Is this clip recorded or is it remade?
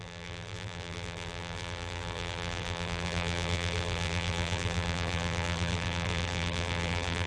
remade